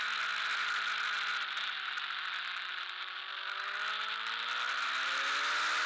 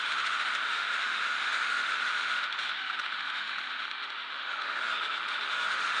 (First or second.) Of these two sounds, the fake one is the second